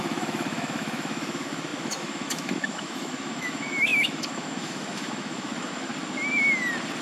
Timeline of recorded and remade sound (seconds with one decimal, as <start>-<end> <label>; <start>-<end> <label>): 0.0-5.9 remade; 5.9-7.0 recorded